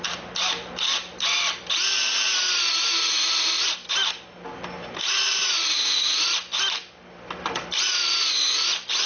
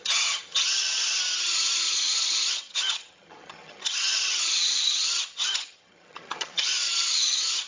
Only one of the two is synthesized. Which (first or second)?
second